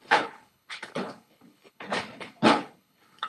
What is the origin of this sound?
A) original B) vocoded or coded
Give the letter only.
B